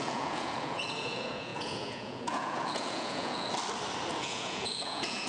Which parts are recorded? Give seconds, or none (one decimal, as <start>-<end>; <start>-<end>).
3.5-4.1